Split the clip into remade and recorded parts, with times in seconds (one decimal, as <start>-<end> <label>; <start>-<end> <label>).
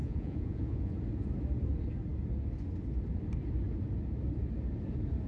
0.0-0.9 remade; 0.9-5.3 recorded